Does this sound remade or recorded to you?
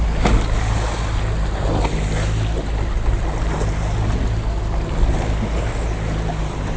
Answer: recorded